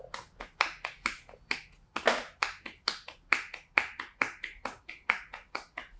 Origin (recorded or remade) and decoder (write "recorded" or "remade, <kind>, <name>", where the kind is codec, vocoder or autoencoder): recorded